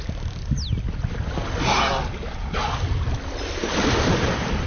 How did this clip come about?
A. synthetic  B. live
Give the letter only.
B